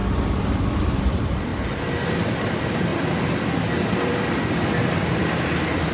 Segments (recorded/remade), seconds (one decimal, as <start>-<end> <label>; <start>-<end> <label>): 0.0-1.0 recorded; 1.0-1.5 remade; 1.5-2.1 recorded; 2.1-5.9 remade